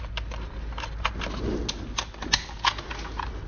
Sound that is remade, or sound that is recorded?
recorded